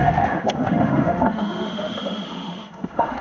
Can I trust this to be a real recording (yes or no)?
no